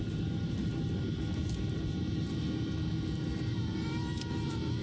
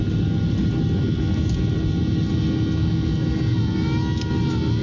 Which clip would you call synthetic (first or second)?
first